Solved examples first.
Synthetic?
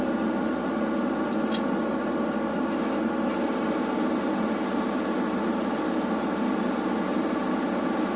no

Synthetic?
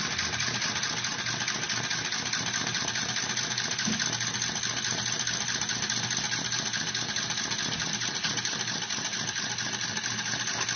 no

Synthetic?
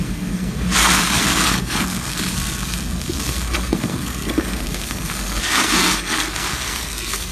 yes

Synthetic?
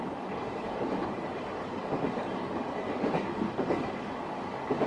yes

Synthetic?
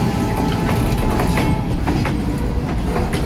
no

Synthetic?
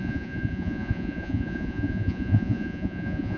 yes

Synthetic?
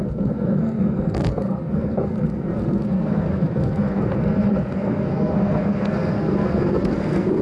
yes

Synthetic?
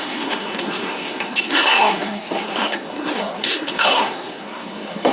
yes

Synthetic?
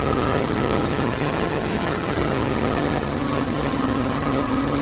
yes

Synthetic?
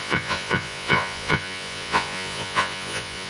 yes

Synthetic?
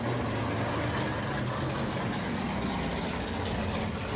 no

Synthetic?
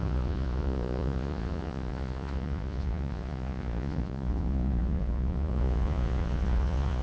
yes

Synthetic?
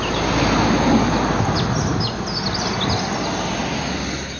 no